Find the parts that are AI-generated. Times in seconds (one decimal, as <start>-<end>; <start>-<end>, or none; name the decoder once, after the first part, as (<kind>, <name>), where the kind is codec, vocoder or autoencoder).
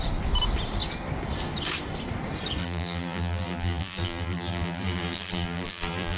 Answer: 2.6-6.2 (vocoder, BigVGAN v2)